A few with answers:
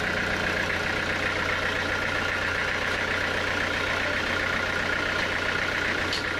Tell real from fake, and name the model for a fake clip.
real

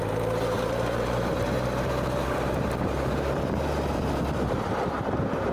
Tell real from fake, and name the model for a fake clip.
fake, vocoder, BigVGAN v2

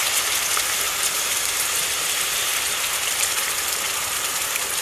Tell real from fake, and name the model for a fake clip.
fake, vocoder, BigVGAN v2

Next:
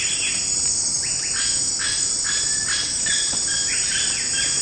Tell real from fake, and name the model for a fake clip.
real